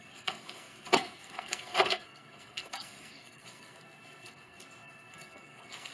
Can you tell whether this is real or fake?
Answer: fake